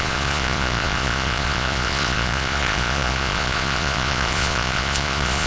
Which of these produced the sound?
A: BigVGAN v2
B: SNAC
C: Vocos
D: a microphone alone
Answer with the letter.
C